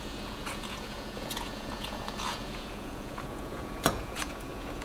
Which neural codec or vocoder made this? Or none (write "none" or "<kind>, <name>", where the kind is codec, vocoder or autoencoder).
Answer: vocoder, Vocos